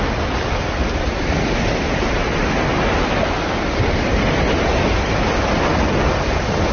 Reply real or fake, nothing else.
real